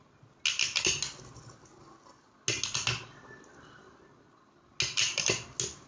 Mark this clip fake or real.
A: real